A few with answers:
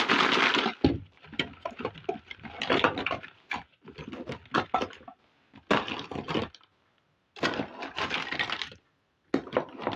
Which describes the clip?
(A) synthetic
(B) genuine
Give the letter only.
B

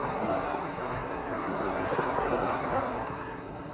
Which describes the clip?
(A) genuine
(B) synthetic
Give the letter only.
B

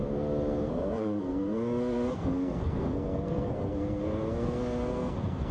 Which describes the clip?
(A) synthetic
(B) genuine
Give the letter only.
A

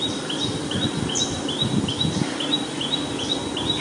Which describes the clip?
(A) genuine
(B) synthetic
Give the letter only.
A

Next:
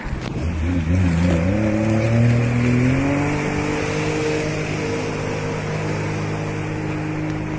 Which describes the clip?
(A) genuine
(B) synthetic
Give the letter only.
A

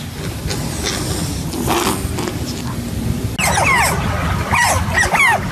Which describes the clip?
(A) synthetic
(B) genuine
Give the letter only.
B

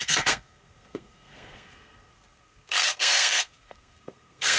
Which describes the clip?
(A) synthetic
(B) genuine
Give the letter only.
A